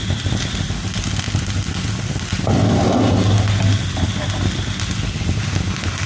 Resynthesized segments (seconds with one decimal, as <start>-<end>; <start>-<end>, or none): none